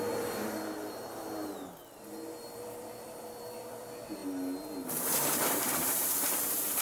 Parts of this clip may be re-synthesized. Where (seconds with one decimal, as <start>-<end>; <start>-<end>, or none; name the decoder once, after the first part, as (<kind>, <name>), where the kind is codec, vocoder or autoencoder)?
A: 0.0-4.2 (vocoder, BigVGAN v2); 4.9-6.8